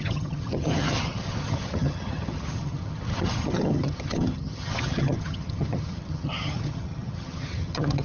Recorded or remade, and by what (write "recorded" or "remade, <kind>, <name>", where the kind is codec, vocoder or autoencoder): remade, vocoder, HiFi-GAN